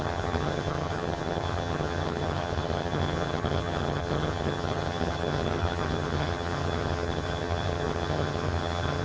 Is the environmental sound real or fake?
fake